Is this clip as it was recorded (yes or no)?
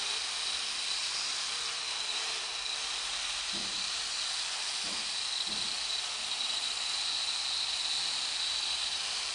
no